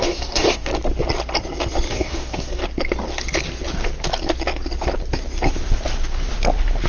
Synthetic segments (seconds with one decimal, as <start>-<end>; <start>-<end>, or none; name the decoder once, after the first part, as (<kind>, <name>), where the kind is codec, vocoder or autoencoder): 0.0-0.7 (codec, DAC); 1.9-2.6